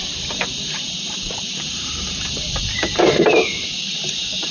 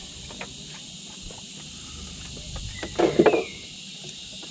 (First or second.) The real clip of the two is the second